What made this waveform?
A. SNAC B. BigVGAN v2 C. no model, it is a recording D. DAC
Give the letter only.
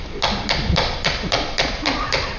C